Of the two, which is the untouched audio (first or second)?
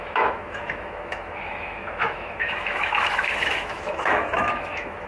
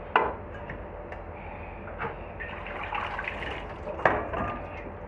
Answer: second